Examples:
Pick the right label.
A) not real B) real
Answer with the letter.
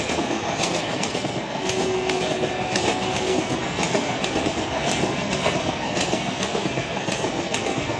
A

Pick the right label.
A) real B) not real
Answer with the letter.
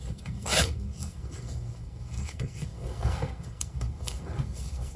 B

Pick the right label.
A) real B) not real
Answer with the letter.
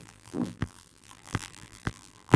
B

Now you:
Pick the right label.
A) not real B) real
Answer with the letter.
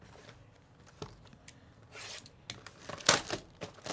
B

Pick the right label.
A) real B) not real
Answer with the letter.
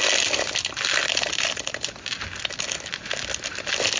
A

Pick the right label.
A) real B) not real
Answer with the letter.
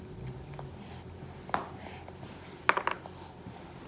A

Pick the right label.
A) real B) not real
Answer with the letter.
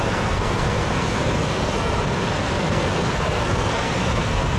B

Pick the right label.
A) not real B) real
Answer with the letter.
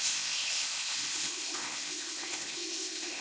A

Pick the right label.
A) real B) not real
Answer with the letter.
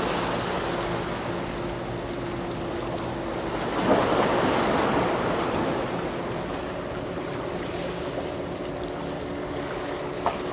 A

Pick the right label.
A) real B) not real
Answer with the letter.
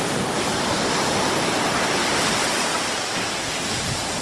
B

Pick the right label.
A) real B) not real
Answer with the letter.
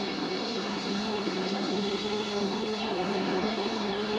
B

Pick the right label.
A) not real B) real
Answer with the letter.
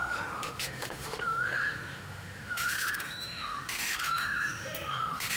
A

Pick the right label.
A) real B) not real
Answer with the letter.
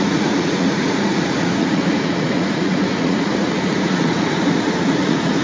B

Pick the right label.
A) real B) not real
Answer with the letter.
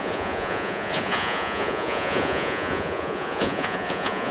B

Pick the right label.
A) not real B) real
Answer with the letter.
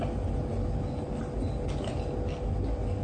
B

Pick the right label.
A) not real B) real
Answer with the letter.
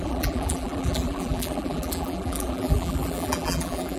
A